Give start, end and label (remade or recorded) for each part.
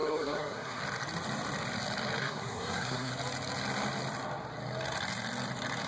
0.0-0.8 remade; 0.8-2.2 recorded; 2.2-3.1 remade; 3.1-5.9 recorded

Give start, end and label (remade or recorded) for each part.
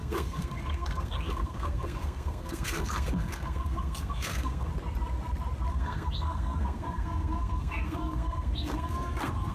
0.0-4.7 remade; 4.7-5.7 recorded; 5.7-9.5 remade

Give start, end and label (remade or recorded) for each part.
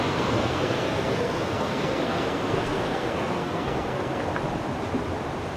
0.0-4.3 remade; 4.3-5.6 recorded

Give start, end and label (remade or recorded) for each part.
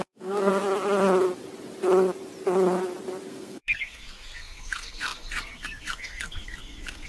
0.0-0.5 remade; 0.5-3.3 recorded; 3.3-7.1 remade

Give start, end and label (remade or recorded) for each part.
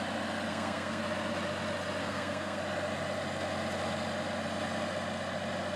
0.0-0.5 recorded; 0.5-1.0 remade; 1.0-2.0 recorded; 2.0-2.6 remade; 2.6-5.8 recorded